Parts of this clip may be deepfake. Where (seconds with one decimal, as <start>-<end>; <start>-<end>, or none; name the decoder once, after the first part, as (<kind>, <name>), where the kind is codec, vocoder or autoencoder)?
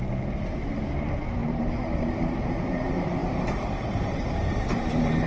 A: 0.0-5.3 (vocoder, BigVGAN v2)